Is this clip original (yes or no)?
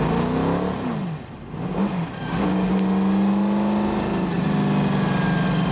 yes